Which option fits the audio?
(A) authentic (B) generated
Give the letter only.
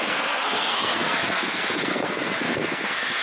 B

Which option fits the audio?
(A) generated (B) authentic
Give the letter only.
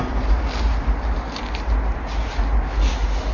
B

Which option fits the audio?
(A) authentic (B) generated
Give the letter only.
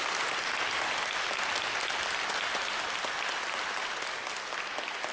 A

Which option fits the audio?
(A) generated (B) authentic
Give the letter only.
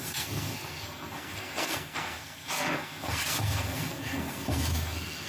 A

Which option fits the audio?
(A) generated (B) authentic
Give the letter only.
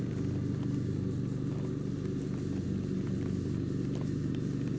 B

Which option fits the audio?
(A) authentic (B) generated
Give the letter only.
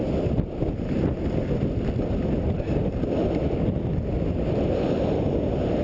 A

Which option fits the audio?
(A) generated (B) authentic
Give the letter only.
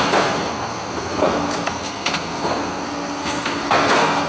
A